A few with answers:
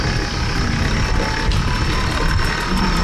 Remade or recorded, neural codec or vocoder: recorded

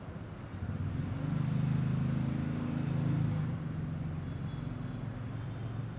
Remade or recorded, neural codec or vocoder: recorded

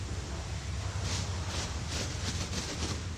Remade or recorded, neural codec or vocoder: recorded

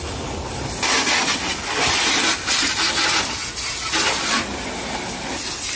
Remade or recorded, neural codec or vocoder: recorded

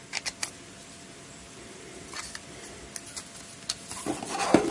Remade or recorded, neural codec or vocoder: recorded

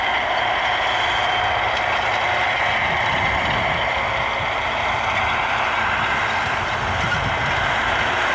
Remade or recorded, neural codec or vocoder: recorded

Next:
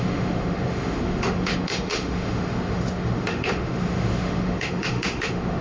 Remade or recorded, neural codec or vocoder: remade, autoencoder, DAC-VAE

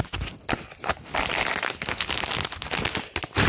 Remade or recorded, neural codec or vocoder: recorded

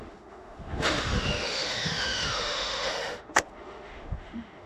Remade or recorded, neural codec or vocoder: remade, autoencoder, DAC-VAE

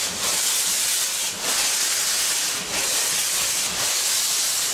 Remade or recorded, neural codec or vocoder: recorded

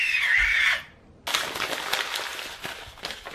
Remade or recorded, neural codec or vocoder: recorded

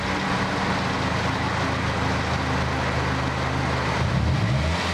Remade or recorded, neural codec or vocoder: recorded